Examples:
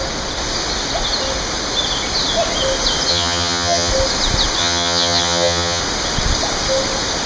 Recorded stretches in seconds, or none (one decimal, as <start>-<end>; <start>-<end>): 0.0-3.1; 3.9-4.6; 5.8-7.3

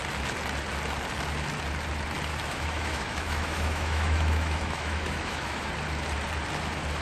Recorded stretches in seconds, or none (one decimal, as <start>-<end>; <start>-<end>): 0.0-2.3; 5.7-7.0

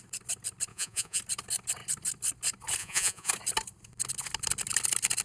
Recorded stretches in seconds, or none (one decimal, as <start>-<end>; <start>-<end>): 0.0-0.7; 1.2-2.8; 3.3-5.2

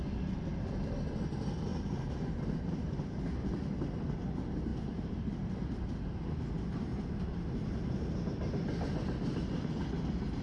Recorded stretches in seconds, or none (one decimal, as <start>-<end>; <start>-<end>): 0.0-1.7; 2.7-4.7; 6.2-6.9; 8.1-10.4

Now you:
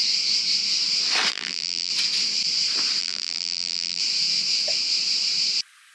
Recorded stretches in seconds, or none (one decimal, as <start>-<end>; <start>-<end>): 0.0-1.3; 1.9-3.0; 4.0-5.9

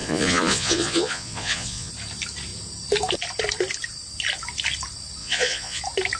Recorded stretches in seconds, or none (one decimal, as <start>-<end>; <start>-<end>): 1.9-5.2; 5.8-6.2

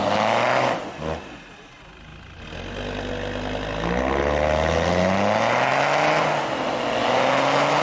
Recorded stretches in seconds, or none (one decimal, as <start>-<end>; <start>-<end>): 0.0-7.8